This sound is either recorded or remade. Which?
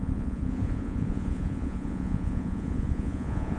remade